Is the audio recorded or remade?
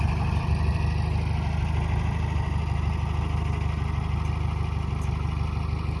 recorded